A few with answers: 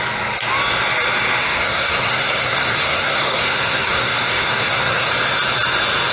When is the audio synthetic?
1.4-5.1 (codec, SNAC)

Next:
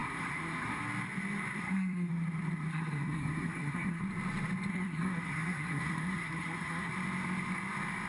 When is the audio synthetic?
0.0-0.8 (codec, SNAC); 1.6-2.1; 2.7-4.0; 4.7-6.9